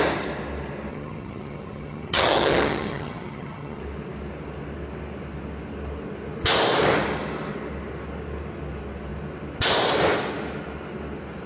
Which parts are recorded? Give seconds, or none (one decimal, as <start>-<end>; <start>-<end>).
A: 0.0-0.9; 3.8-11.5

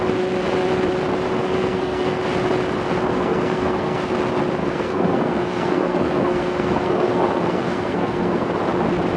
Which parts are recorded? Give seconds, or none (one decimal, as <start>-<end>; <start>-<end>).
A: 0.0-1.4; 2.2-3.1; 4.0-4.6; 8.5-9.2

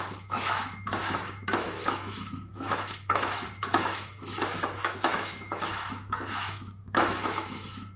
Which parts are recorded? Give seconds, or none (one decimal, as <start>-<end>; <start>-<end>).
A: none

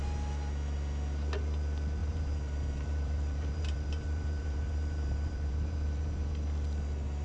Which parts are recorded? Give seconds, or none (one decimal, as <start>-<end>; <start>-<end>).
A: 0.0-2.0; 6.3-7.2

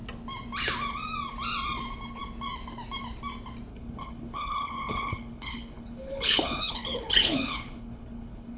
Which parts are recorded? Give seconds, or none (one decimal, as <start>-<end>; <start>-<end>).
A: 0.0-3.7

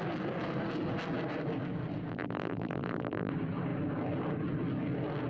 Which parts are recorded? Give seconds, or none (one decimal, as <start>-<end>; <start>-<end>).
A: 0.0-2.1; 3.3-5.3